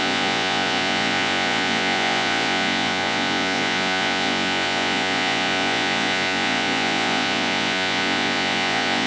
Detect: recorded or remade remade